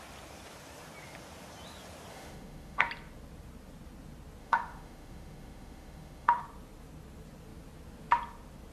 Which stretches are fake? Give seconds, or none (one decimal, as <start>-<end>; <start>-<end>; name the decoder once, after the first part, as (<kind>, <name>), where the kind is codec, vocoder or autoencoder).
2.1-2.9 (autoencoder, DAC-VAE); 4.4-6.4